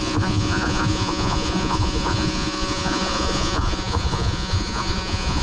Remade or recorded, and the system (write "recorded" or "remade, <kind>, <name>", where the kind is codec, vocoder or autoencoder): remade, vocoder, Vocos